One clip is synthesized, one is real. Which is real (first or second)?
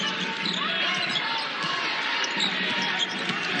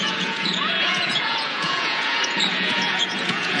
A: first